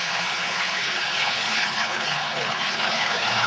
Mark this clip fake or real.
fake